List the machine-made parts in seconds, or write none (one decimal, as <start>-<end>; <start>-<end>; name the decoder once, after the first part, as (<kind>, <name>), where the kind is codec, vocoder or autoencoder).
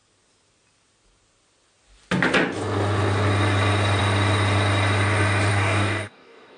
5.5-6.6 (codec, DAC)